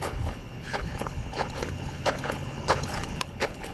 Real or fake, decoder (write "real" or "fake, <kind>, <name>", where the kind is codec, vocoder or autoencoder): fake, codec, HILCodec